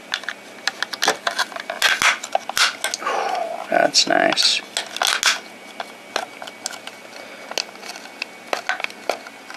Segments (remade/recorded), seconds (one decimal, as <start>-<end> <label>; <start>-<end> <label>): 0.0-9.6 recorded